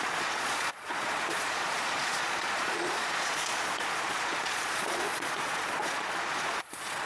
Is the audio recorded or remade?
remade